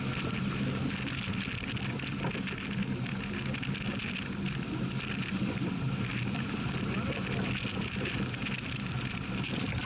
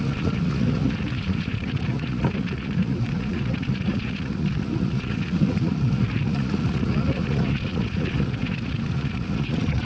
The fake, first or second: second